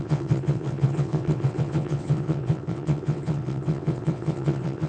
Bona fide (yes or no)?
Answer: no